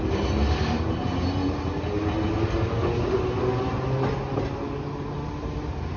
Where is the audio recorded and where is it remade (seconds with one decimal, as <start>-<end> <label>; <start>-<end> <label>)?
0.0-6.0 recorded